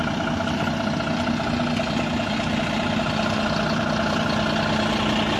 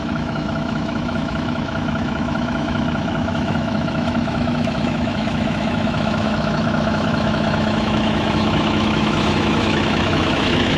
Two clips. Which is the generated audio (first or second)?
second